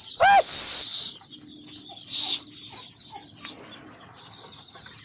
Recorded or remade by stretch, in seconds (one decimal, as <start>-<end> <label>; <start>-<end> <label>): 0.0-5.0 recorded